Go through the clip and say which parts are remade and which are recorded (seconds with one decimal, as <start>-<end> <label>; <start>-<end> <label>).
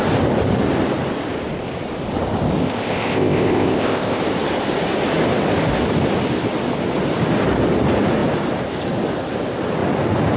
0.0-2.6 recorded; 2.6-4.2 remade; 4.2-10.4 recorded